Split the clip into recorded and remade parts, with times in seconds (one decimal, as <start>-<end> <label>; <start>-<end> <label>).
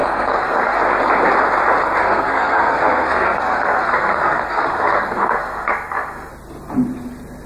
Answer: 0.0-0.8 remade; 0.8-2.0 recorded; 2.0-6.3 remade; 6.3-7.5 recorded